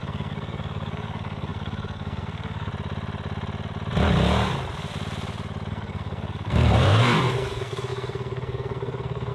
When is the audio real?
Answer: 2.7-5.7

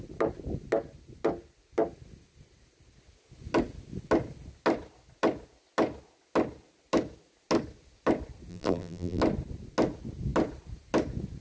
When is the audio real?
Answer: 0.0-8.5; 9.2-11.4

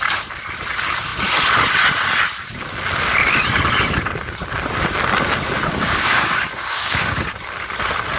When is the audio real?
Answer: 0.0-5.7; 7.3-8.2

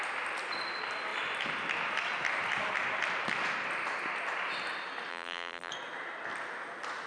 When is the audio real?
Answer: 0.0-5.1; 5.7-7.1

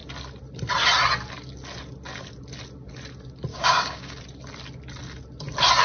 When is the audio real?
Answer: 0.0-3.5; 4.2-5.8

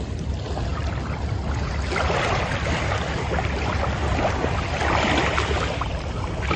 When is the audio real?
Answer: 0.0-6.6

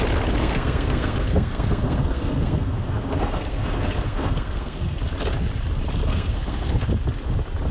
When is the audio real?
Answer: 0.0-0.4; 5.0-6.1; 6.8-7.7